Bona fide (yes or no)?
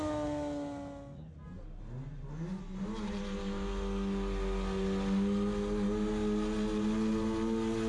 yes